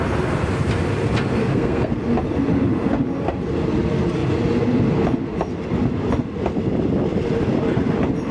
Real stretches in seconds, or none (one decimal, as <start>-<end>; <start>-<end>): 0.0-1.4; 2.0-8.3